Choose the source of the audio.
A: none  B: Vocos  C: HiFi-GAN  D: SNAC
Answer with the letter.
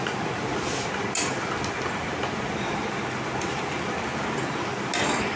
A